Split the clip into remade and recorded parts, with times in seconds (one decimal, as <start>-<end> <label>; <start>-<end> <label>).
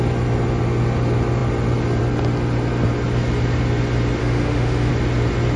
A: 0.0-4.2 recorded; 4.2-4.9 remade; 4.9-5.6 recorded